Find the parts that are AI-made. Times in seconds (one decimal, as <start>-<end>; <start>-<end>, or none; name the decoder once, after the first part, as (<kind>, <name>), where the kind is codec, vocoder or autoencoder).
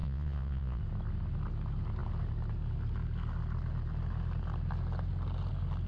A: 0.0-0.8 (vocoder, Vocos)